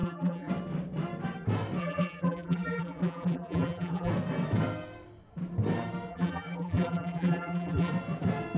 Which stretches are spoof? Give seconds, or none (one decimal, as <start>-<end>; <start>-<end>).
0.0-0.5; 1.8-4.1; 6.1-7.9